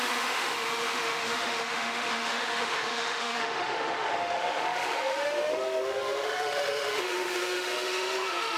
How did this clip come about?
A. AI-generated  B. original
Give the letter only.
A